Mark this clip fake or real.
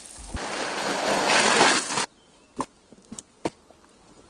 real